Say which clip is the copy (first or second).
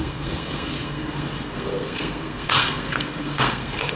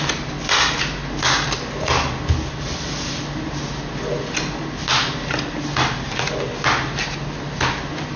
first